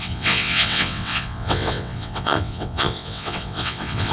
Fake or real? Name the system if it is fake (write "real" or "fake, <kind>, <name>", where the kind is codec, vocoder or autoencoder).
fake, vocoder, WaveNeXt